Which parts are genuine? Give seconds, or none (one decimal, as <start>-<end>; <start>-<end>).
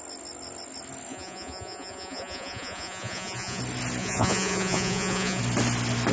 0.0-1.1; 3.6-4.0; 5.4-6.1